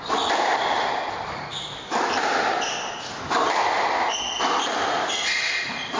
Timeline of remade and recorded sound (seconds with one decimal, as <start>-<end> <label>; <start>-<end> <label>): 0.0-6.0 recorded